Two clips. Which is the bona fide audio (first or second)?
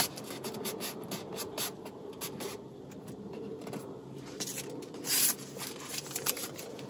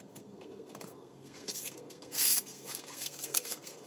first